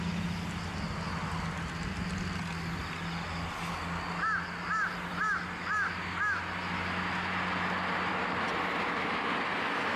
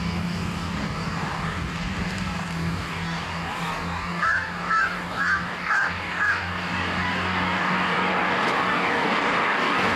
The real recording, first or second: first